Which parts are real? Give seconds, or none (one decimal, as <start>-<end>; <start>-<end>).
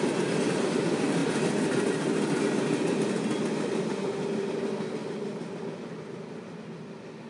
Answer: 0.0-7.3